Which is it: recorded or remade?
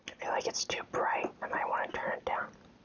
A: recorded